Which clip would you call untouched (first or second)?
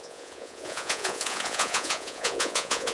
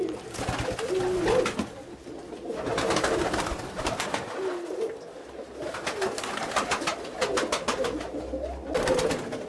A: second